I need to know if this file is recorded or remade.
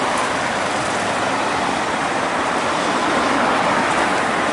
recorded